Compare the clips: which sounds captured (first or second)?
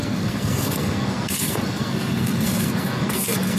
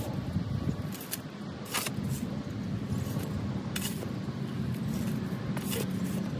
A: second